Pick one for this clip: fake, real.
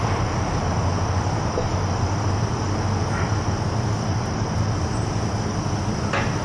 real